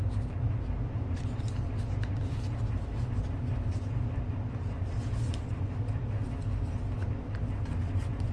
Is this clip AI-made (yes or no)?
no